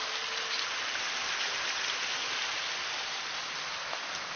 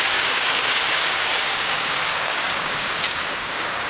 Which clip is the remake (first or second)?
second